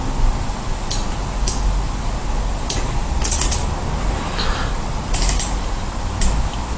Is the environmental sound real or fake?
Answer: real